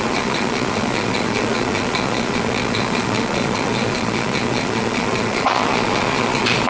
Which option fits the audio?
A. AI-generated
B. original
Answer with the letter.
A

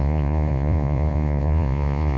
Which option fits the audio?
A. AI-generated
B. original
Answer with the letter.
A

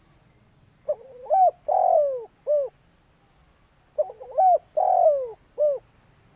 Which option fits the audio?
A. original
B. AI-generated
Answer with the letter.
A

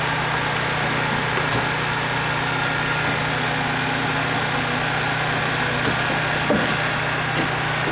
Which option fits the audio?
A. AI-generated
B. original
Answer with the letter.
B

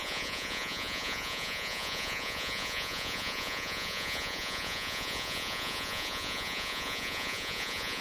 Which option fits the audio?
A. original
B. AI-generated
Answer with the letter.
B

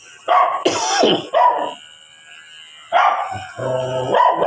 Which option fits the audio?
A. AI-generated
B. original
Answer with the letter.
B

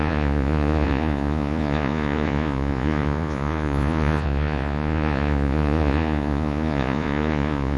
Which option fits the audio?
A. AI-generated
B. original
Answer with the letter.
A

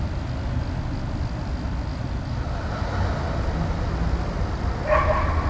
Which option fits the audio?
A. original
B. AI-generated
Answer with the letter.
A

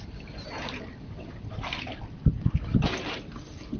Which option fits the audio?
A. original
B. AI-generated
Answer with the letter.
A